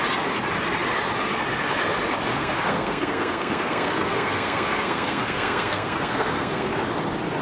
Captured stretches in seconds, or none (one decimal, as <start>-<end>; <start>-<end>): 0.0-2.3; 6.7-7.4